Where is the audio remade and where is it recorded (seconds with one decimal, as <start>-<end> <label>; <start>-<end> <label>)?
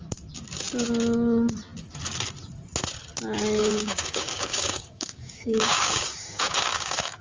0.0-3.6 recorded; 3.6-7.2 remade